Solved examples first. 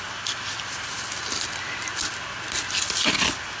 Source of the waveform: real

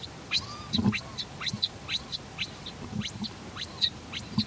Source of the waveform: real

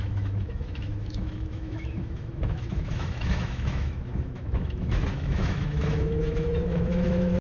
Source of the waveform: fake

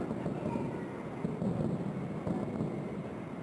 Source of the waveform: real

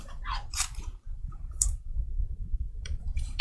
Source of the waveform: fake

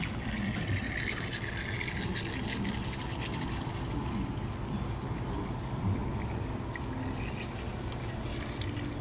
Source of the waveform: real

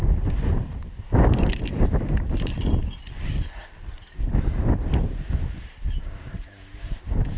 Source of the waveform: real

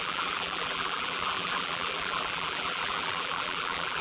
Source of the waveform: fake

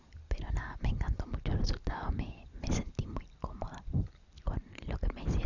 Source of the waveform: real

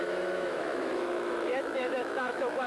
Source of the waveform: fake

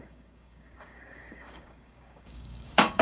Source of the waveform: fake